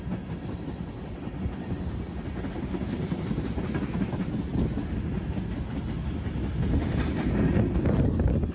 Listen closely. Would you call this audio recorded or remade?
recorded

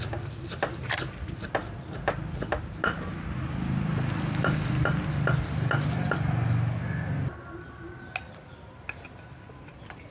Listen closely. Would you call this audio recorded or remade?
recorded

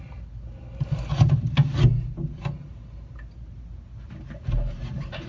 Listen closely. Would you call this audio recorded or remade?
recorded